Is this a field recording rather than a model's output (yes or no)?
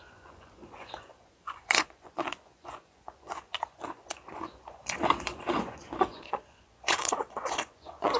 no